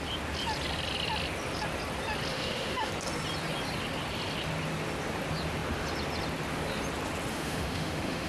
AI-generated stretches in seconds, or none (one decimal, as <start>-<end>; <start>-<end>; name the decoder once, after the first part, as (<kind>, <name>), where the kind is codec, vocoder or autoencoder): 2.3-2.9 (autoencoder, DAC-VAE); 7.3-8.3